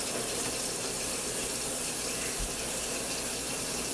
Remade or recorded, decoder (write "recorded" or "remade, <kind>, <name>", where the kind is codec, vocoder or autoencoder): recorded